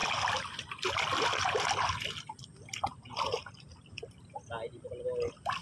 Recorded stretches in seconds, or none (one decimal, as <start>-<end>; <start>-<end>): 0.0-5.6